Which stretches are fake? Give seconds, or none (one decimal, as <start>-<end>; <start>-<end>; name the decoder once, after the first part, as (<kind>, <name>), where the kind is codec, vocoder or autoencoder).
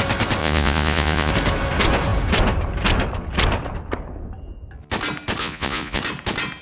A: 0.4-1.3 (vocoder, Vocos); 5.4-6.0